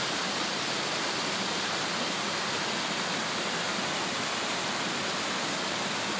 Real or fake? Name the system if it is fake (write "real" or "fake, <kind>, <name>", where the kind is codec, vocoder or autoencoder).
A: real